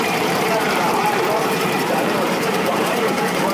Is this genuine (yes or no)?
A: no